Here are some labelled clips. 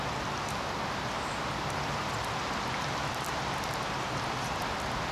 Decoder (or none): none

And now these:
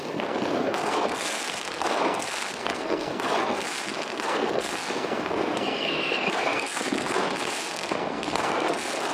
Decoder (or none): codec, SNAC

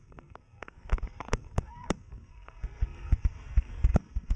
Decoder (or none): codec, SNAC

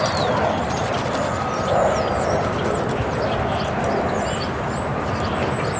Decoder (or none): none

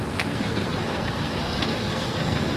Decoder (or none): codec, SNAC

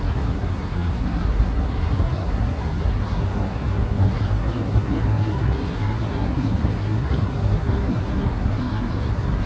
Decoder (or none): codec, SNAC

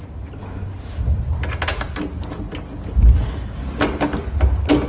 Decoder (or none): none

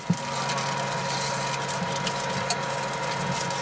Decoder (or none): none